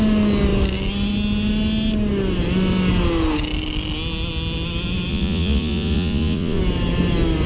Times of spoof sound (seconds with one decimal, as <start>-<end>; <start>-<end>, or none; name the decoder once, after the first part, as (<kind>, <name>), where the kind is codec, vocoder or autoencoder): 5.1-6.6 (vocoder, Vocos)